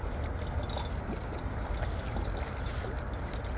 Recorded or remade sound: recorded